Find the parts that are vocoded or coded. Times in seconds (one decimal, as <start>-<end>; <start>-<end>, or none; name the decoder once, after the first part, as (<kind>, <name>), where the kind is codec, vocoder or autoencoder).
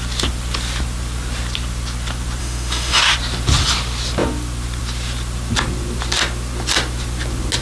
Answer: 2.4-3.0 (autoencoder, DAC-VAE)